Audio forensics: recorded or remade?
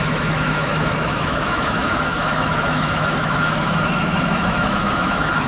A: remade